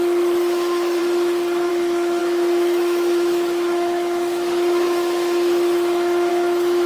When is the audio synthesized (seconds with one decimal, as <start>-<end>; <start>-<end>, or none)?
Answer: 0.0-1.0; 1.7-6.9